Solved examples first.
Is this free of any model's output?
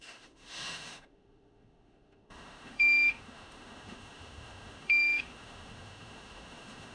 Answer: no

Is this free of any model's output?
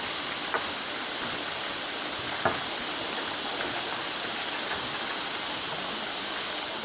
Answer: yes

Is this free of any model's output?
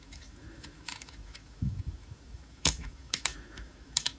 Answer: no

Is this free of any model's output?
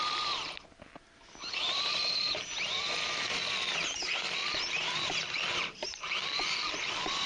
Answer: yes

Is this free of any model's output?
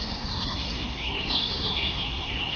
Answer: no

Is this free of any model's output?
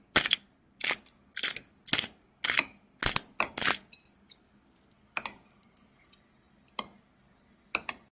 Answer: yes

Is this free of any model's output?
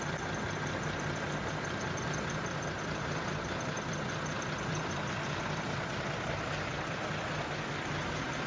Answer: no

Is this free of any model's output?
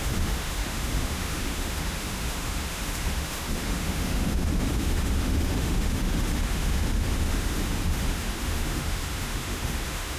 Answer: no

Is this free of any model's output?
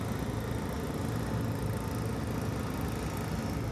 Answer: yes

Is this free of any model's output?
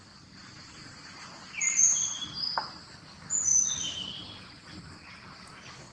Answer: yes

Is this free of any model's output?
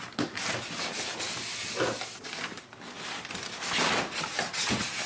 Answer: yes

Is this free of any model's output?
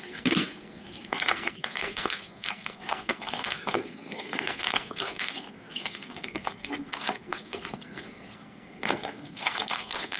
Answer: no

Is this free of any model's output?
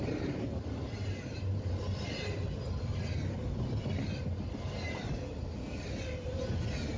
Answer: yes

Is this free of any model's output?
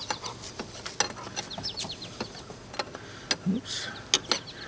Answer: yes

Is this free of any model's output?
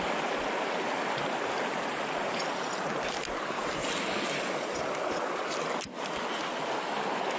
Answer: yes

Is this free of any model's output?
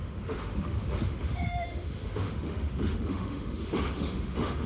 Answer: no